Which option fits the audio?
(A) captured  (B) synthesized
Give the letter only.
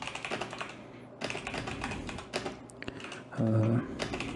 A